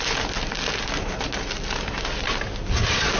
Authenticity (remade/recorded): recorded